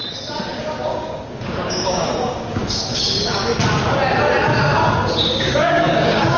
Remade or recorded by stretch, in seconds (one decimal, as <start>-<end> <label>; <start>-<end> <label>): 0.0-0.6 recorded; 0.6-3.5 remade; 3.5-5.3 recorded; 5.3-6.4 remade